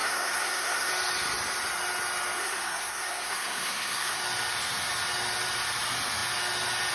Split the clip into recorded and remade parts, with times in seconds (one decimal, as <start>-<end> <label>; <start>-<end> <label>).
0.0-0.9 remade; 0.9-2.4 recorded; 2.4-4.2 remade; 4.2-6.9 recorded

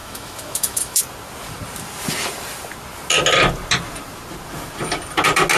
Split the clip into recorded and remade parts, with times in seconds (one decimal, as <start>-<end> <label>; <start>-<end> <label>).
0.0-1.0 remade; 1.0-5.6 recorded